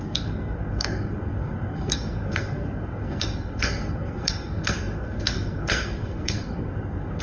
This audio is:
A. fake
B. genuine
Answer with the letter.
A